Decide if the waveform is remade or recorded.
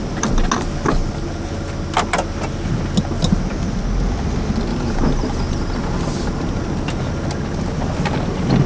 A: recorded